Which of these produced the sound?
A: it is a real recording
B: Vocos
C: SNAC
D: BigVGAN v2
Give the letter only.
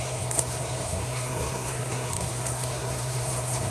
C